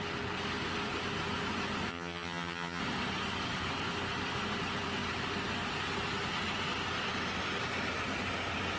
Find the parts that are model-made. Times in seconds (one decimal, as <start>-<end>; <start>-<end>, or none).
1.9-2.8